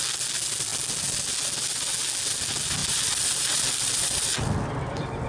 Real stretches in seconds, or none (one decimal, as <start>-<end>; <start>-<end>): 0.0-2.8